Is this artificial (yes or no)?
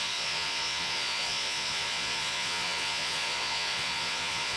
yes